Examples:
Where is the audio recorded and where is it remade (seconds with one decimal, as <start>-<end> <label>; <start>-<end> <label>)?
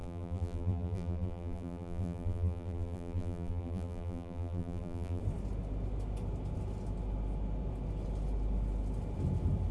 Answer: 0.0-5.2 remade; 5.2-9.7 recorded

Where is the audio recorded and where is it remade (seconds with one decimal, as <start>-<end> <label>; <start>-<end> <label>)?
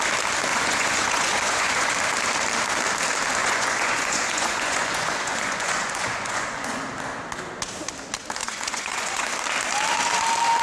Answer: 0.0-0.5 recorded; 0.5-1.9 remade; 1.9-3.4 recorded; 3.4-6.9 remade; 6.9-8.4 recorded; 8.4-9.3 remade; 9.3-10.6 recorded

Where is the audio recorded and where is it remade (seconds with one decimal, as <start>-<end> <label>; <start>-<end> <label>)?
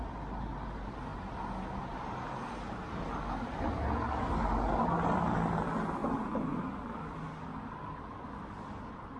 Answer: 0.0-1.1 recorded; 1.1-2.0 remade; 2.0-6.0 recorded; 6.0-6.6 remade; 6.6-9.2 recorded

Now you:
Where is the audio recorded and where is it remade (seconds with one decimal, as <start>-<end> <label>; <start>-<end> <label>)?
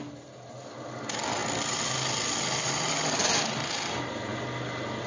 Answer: 0.0-5.1 recorded